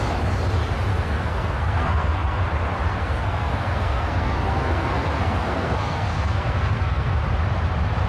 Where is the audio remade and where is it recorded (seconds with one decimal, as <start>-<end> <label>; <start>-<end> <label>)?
0.0-0.9 recorded; 0.9-2.4 remade; 2.4-2.9 recorded; 2.9-7.2 remade; 7.2-8.1 recorded